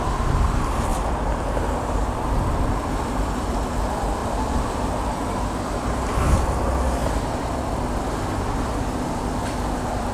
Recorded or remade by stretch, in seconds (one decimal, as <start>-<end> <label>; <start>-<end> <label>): 0.0-0.9 recorded; 0.9-3.7 remade; 3.7-4.2 recorded; 4.2-5.3 remade; 5.3-10.1 recorded